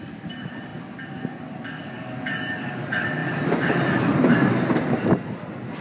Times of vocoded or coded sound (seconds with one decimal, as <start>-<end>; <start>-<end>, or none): none